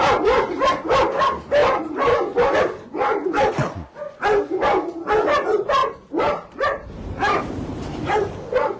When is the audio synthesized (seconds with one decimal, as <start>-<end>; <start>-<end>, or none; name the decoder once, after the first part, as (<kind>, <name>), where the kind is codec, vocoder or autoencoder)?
5.8-8.3 (vocoder, BigVGAN v2)